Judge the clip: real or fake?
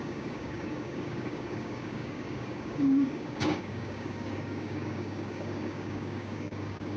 fake